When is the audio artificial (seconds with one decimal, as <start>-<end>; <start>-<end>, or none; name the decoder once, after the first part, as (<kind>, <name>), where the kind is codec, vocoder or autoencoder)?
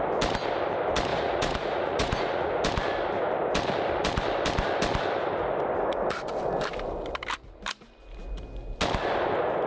1.1-2.5 (vocoder, Vocos)